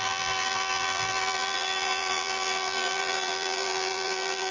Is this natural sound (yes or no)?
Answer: no